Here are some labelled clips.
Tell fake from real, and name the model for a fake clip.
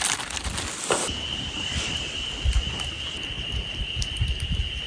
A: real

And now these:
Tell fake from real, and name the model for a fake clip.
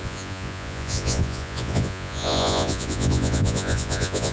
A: fake, vocoder, Vocos